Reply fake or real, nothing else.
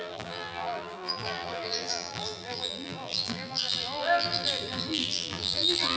fake